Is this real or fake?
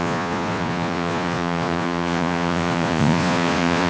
fake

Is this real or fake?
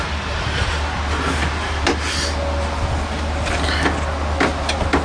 real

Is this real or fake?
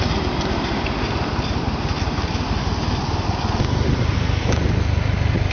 real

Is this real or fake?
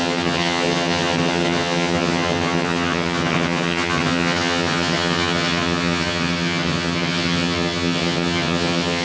fake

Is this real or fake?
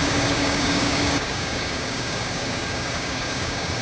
fake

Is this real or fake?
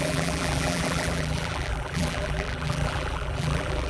fake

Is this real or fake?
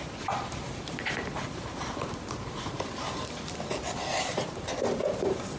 fake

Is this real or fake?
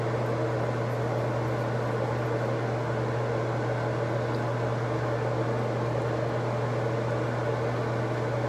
real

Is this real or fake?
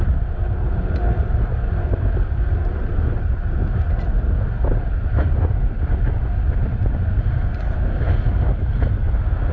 real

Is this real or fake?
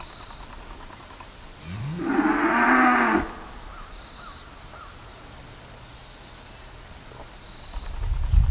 real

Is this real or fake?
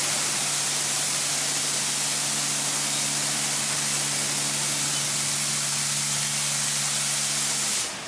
real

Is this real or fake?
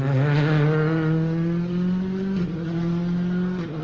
real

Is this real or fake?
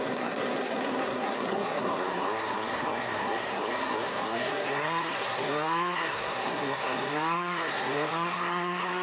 fake